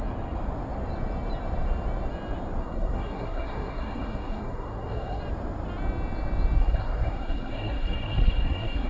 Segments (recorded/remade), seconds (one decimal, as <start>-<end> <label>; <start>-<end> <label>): 0.0-2.6 recorded; 2.6-5.2 remade; 5.2-6.6 recorded; 6.6-8.9 remade